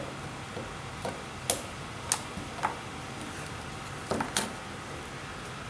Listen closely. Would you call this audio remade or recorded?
recorded